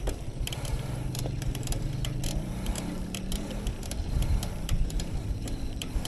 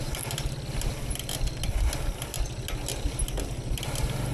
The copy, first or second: first